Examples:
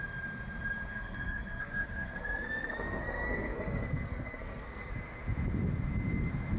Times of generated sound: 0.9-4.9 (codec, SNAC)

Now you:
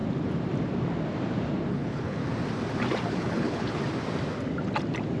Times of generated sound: 1.7-2.2 (codec, HILCodec); 3.1-3.8

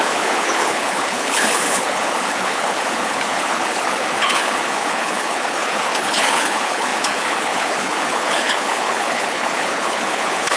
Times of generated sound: 0.0-10.6 (codec, HILCodec)

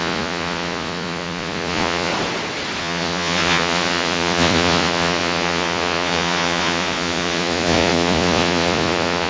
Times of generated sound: 0.0-2.1 (vocoder, Vocos); 2.8-9.3

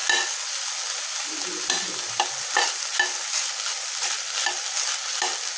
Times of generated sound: none

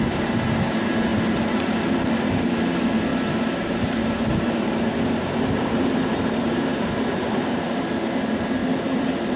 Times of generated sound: 1.1-1.6 (vocoder, BigVGAN v2); 3.1-7.8; 8.6-9.4